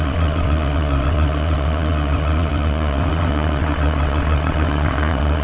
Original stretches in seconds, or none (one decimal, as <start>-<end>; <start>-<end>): none